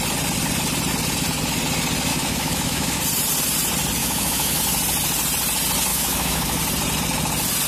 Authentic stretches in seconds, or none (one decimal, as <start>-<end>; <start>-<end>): 0.0-2.1; 3.0-4.0; 4.6-5.9; 6.6-7.7